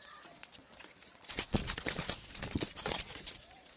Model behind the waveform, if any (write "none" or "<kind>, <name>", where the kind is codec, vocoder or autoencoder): vocoder, Vocos